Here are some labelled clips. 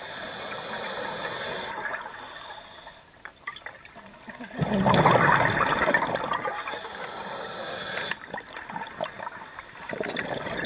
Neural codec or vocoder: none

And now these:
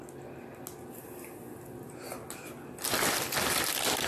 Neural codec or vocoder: none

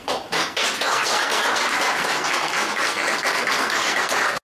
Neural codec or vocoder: codec, SNAC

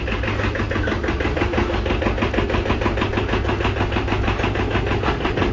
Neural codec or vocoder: none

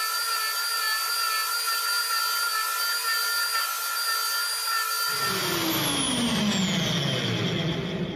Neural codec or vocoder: none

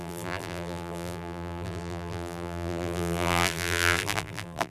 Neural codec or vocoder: vocoder, BigVGAN v2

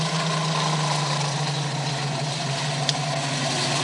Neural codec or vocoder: none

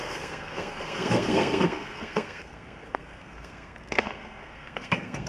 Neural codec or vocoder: codec, SNAC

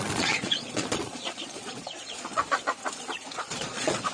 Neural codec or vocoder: vocoder, Vocos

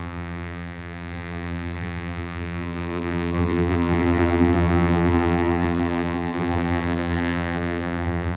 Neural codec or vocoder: vocoder, BigVGAN v2